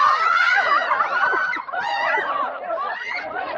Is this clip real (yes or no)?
no